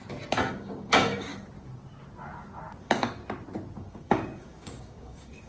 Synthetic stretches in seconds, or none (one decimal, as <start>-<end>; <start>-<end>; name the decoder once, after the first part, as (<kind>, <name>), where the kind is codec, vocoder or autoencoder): 0.5-1.3 (codec, DAC); 2.8-3.2; 3.9-5.5